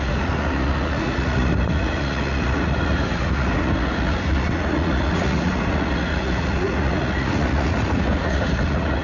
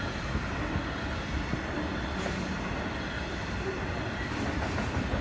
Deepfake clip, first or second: first